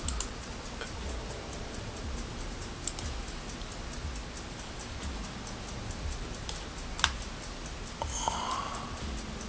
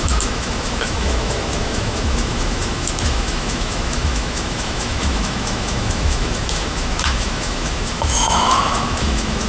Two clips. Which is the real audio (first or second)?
first